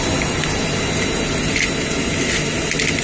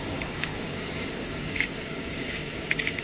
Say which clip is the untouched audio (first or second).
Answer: first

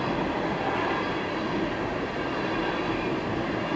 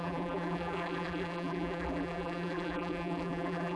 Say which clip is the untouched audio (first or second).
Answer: first